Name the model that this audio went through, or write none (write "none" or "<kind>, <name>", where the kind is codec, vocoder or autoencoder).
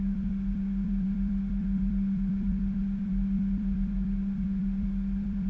vocoder, BigVGAN v2